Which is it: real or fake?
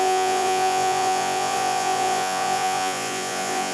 fake